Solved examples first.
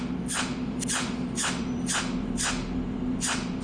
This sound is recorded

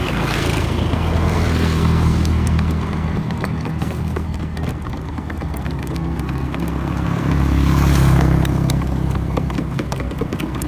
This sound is remade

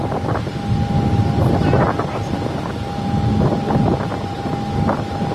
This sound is recorded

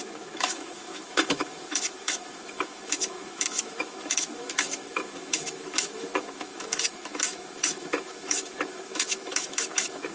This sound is remade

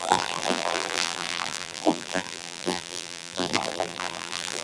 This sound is remade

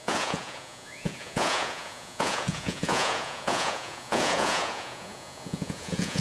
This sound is remade